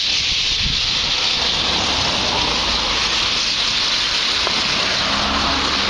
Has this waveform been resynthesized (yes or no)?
no